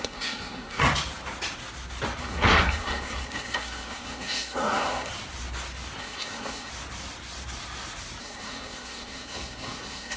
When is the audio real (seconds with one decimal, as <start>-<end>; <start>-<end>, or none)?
0.8-2.2; 5.1-6.0; 6.7-8.2